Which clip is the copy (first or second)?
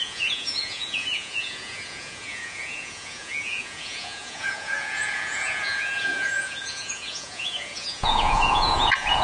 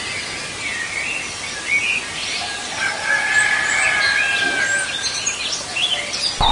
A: first